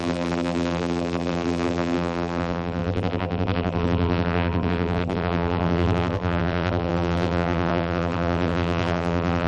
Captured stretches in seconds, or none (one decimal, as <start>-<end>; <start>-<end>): none